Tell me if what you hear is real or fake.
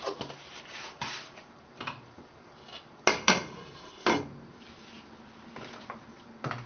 real